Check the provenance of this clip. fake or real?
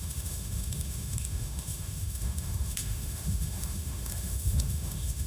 fake